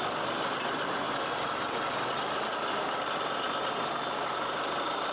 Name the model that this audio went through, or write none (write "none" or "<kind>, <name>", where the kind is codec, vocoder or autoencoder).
none